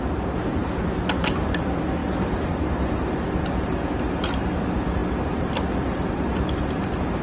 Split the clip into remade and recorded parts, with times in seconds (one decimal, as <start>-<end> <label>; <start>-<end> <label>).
0.0-7.2 recorded